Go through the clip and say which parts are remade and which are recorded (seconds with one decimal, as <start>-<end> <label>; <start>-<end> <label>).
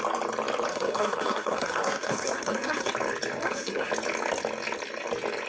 0.0-0.7 recorded; 0.7-2.9 remade; 2.9-3.4 recorded; 3.4-3.9 remade; 3.9-5.5 recorded